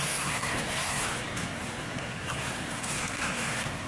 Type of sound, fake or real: fake